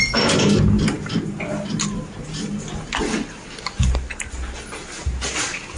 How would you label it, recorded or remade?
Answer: recorded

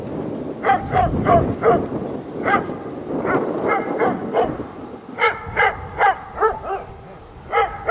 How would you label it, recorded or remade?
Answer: recorded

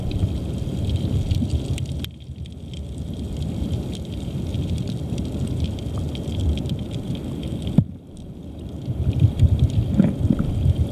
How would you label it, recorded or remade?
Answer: recorded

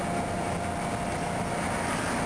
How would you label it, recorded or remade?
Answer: recorded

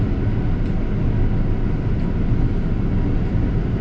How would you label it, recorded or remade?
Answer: recorded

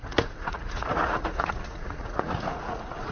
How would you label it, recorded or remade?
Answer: remade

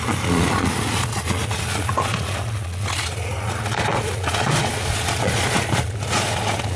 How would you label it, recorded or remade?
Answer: remade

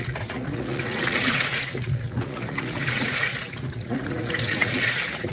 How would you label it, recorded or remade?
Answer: remade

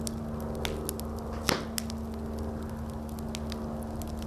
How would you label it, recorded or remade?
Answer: recorded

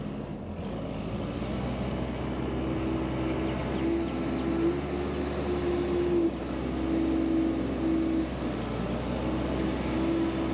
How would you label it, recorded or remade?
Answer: recorded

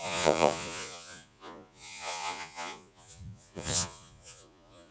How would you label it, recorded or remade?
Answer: remade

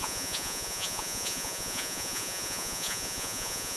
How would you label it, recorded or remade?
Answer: remade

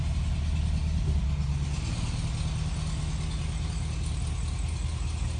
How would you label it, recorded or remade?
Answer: recorded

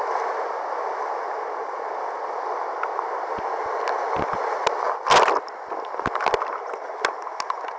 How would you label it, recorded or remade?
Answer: recorded